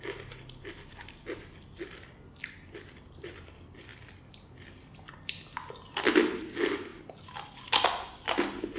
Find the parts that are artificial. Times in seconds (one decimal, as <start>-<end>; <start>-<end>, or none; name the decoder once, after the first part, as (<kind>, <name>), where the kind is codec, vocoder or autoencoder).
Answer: none